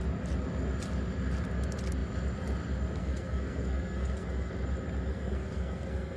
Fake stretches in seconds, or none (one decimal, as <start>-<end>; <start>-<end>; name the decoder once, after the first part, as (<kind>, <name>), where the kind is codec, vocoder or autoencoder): 3.0-4.5 (codec, SNAC); 5.1-6.2